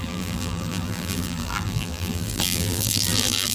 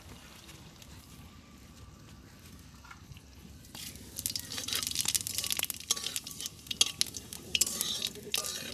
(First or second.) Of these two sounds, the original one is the second